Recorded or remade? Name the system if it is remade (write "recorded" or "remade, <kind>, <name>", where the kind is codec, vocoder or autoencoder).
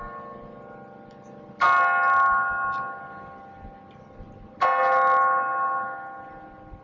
recorded